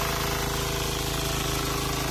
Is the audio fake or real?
real